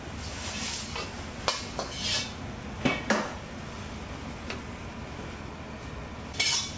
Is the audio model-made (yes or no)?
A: no